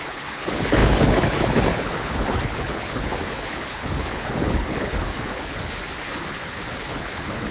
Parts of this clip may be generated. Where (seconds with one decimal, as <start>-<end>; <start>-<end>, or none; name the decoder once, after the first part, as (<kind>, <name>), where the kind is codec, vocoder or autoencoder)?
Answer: 0.0-7.5 (codec, HILCodec)